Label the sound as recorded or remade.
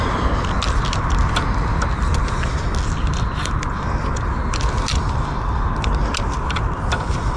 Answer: recorded